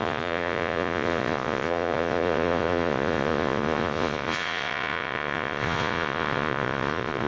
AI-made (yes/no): yes